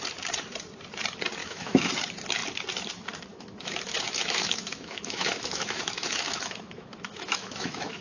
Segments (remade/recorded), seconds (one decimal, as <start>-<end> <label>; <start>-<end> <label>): 0.0-1.4 recorded; 1.4-1.9 remade; 1.9-3.3 recorded; 3.3-8.0 remade